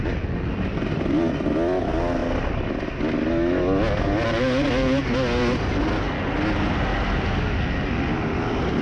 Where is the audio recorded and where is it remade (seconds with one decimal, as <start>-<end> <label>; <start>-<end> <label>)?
0.0-8.8 recorded